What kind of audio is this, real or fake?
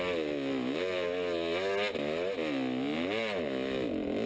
real